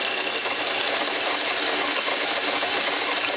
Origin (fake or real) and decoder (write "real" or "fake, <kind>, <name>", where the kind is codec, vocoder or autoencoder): real